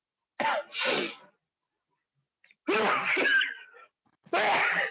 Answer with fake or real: real